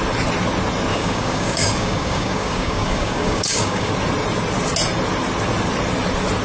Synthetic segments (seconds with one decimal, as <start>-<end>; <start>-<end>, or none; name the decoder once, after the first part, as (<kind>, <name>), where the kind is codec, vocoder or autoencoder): 0.9-3.9 (codec, DAC)